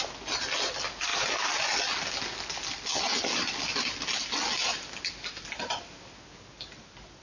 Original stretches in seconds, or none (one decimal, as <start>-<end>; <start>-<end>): 0.0-7.2